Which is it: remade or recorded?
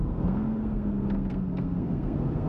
remade